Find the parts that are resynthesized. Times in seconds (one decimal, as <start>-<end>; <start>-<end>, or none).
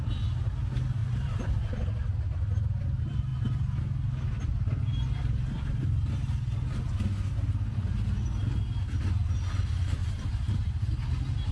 1.0-2.2; 10.0-10.7